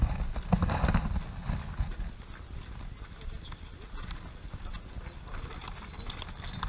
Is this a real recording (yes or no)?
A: yes